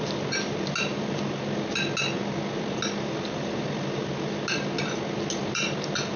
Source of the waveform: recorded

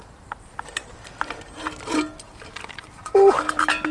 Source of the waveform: recorded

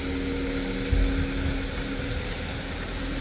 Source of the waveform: recorded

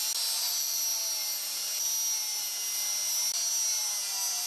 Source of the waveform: recorded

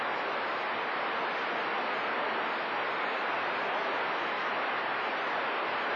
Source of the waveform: recorded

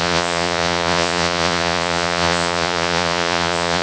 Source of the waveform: remade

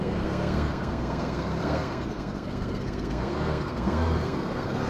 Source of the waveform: remade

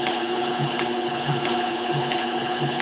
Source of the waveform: remade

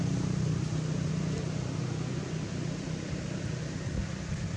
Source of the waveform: recorded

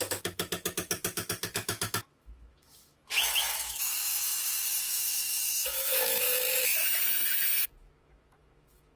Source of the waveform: remade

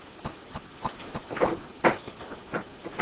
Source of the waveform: recorded